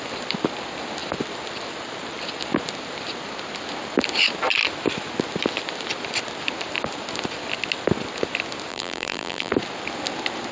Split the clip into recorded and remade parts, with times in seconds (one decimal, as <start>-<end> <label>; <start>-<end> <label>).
0.0-8.7 recorded; 8.7-9.5 remade; 9.5-10.5 recorded